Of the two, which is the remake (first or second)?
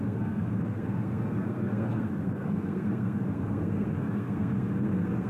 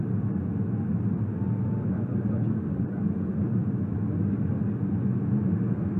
first